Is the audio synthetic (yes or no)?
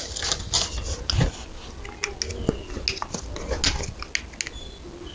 no